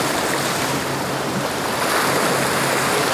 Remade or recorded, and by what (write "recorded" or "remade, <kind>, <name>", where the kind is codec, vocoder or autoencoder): recorded